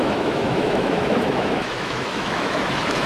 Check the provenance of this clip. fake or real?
fake